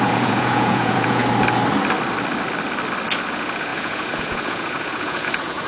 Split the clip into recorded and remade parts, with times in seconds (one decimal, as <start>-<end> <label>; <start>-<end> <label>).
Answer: 0.0-1.2 remade; 1.2-3.3 recorded; 3.3-5.7 remade